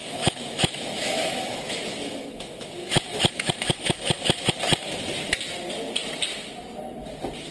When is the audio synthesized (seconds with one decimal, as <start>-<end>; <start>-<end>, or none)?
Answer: 0.0-4.5